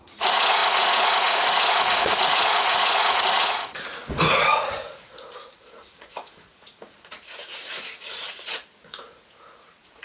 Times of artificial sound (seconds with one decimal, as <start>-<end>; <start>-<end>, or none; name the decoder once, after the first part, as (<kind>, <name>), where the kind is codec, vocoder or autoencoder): 0.0-10.0 (vocoder, Vocos)